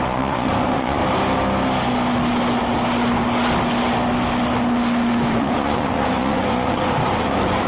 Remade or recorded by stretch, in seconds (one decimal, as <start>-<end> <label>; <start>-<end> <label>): 0.0-1.0 remade; 1.0-5.3 recorded; 5.3-7.7 remade